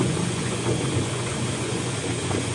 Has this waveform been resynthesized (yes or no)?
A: yes